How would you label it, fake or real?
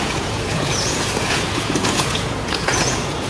fake